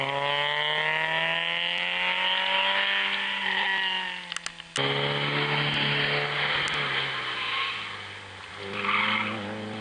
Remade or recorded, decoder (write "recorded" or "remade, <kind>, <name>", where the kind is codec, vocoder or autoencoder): recorded